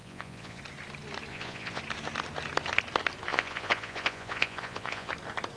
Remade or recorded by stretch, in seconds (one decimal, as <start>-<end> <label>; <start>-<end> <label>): 0.0-0.6 remade; 0.6-1.3 recorded; 1.3-1.8 remade; 1.8-3.3 recorded; 3.3-5.1 remade; 5.1-5.6 recorded